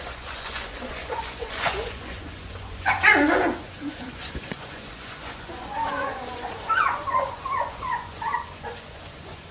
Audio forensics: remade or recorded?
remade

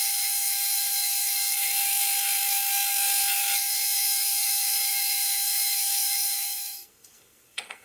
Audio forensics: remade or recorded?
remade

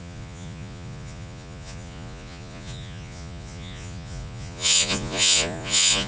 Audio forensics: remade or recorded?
remade